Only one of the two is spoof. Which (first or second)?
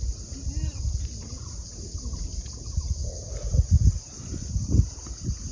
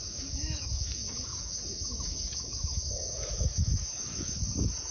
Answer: second